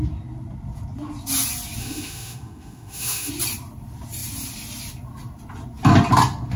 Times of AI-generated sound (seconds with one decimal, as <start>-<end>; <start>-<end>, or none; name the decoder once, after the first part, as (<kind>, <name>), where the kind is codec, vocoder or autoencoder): 1.8-3.3 (autoencoder, DAC-VAE)